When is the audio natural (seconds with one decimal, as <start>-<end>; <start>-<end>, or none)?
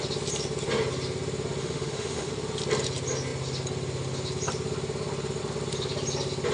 0.0-1.6; 2.3-6.5